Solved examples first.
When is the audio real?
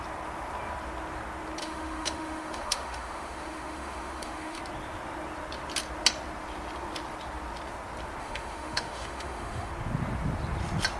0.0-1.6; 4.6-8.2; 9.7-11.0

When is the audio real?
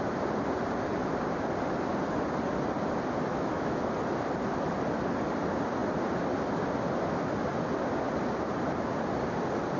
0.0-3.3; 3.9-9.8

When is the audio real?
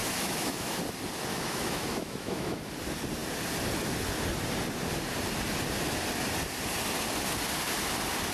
0.8-1.3; 2.6-8.3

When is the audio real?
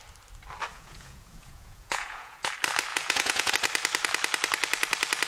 0.0-0.7; 2.5-2.9; 3.5-5.3